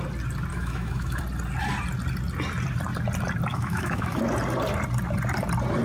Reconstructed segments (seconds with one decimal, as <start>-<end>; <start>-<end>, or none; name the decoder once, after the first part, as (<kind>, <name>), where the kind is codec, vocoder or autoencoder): 0.5-1.2 (autoencoder, DAC-VAE); 3.5-4.2